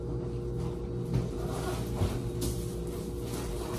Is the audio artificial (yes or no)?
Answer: no